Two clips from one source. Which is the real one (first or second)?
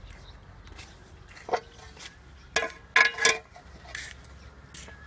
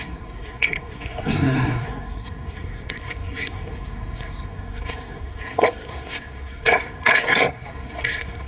first